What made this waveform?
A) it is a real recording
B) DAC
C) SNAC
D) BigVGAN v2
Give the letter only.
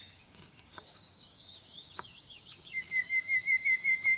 B